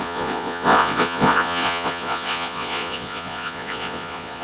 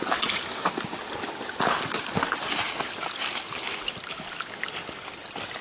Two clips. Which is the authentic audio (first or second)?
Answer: second